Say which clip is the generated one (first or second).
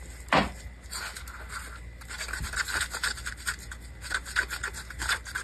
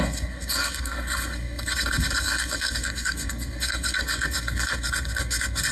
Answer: second